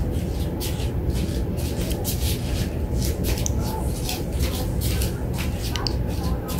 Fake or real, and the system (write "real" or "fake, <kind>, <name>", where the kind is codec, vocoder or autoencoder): real